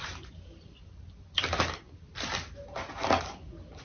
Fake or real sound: real